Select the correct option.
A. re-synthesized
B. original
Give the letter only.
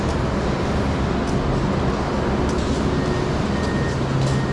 B